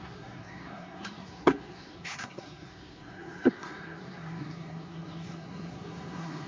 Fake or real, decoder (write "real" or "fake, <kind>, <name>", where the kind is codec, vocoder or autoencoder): fake, codec, SNAC